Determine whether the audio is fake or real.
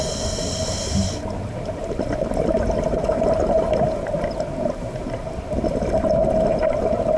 real